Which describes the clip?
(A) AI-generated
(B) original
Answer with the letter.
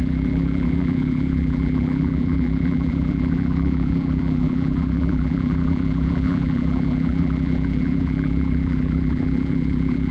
A